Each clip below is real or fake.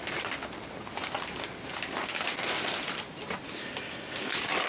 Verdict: real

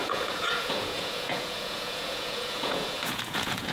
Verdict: fake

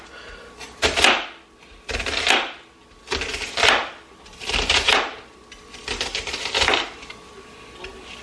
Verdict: real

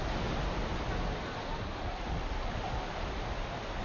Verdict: real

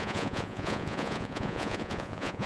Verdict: fake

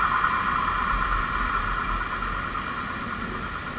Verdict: real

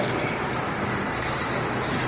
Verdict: real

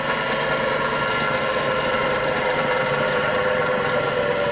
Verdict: real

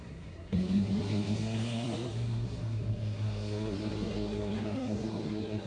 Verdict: fake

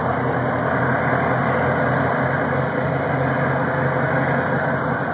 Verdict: real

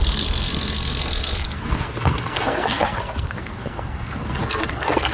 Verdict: fake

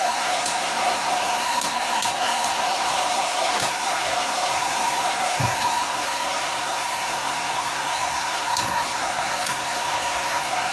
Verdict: fake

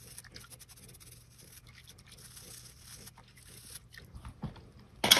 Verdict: real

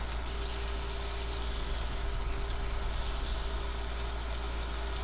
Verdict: real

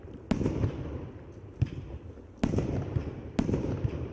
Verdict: real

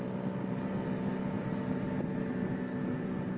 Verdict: real